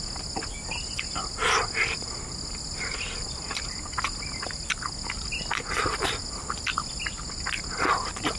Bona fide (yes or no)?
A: yes